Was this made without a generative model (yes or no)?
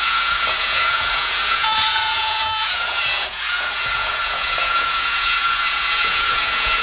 no